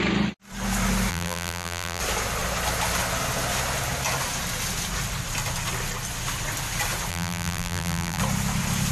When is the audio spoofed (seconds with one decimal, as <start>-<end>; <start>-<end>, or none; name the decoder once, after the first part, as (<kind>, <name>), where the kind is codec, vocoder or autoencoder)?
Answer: 1.1-2.0 (vocoder, BigVGAN v2); 7.1-8.2